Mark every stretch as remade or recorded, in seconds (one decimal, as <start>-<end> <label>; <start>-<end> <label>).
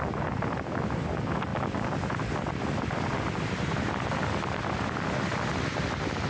0.0-6.3 recorded